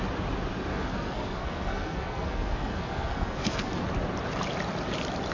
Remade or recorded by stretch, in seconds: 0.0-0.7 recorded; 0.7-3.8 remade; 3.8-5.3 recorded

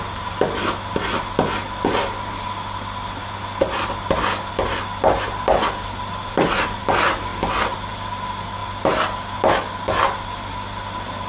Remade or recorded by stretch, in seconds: 0.0-11.3 recorded

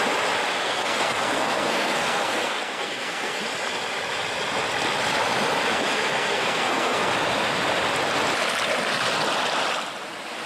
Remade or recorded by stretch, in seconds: 0.0-0.6 recorded; 0.6-3.4 remade; 3.4-5.7 recorded; 5.7-7.1 remade; 7.1-10.5 recorded

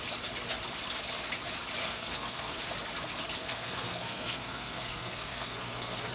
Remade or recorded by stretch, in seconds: 0.0-1.8 recorded; 1.8-2.6 remade; 2.6-3.4 recorded; 3.4-6.1 remade